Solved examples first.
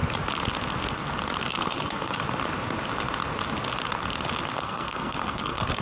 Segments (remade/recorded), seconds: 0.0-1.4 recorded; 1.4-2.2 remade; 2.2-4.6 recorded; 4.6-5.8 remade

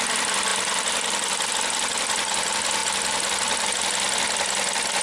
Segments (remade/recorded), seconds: 0.0-0.5 recorded; 0.5-1.5 remade; 1.5-2.8 recorded; 2.8-3.7 remade; 3.7-5.0 recorded

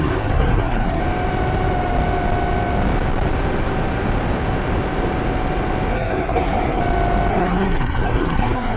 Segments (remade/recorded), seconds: 0.0-1.0 remade; 1.0-5.9 recorded; 5.9-6.8 remade; 6.8-7.3 recorded; 7.3-8.8 remade

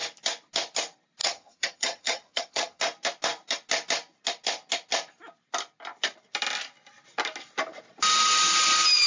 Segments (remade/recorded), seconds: 0.0-1.2 recorded; 1.2-2.8 remade; 2.8-9.1 recorded

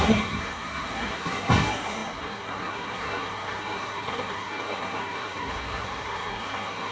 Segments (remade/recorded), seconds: 0.0-6.9 remade

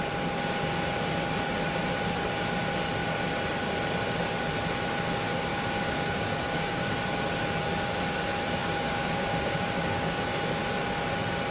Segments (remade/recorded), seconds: 0.0-5.5 recorded; 5.5-6.9 remade; 6.9-8.6 recorded; 8.6-10.6 remade; 10.6-11.5 recorded